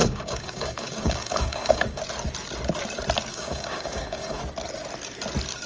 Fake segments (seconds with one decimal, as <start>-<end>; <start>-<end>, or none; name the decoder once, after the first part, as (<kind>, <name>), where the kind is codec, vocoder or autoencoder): 0.0-2.0 (codec, DAC); 3.3-4.4